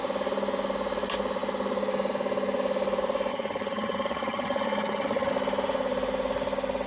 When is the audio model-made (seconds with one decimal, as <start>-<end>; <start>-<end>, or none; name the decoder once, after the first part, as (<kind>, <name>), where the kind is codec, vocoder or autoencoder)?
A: 3.3-5.3 (vocoder, HiFi-GAN)